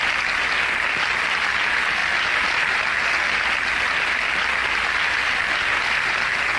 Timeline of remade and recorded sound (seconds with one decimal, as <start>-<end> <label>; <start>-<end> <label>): 0.0-6.6 recorded